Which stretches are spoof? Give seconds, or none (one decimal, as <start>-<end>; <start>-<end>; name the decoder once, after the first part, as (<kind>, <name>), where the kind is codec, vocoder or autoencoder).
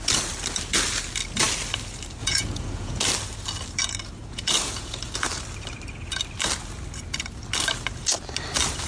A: 2.2-3.0 (vocoder, Vocos); 4.2-5.0